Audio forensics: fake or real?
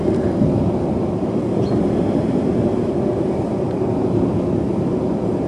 fake